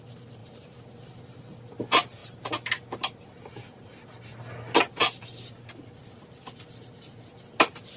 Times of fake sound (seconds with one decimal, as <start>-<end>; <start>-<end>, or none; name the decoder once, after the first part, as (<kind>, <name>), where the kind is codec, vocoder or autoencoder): 0.4-1.7 (vocoder, BigVGAN v2)